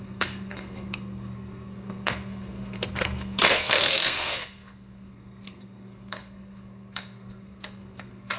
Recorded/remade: remade